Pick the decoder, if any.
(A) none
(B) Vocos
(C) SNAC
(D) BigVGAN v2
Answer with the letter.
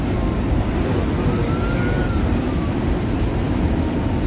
A